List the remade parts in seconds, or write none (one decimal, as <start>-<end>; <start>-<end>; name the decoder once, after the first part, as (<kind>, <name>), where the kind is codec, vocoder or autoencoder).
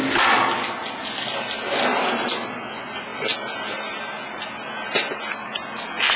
none